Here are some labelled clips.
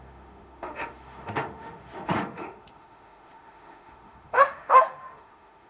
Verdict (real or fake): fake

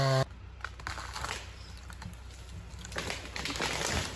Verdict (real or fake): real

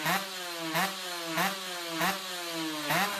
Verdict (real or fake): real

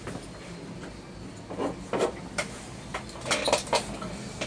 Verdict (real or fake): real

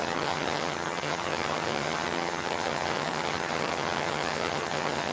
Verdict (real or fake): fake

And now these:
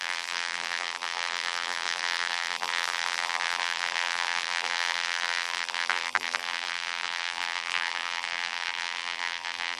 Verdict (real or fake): fake